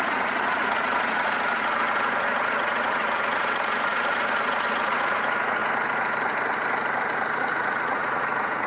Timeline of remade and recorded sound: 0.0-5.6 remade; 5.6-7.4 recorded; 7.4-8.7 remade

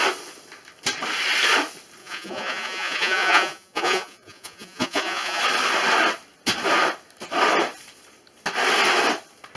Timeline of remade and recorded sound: 0.0-2.0 recorded; 2.0-5.4 remade; 5.4-9.6 recorded

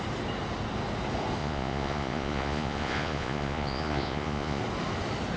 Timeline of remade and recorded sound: 0.0-1.4 recorded; 1.4-4.6 remade; 4.6-5.4 recorded